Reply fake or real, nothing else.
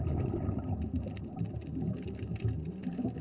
real